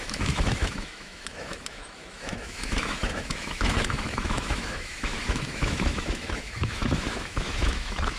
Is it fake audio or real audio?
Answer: fake